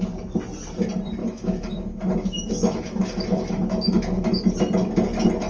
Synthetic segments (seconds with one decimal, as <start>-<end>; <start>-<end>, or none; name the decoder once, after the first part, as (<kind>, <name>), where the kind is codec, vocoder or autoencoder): 1.2-4.5 (autoencoder, DAC-VAE)